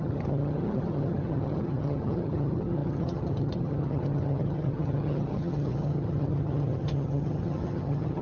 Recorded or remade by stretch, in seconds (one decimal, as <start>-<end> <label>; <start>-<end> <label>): 0.0-8.2 remade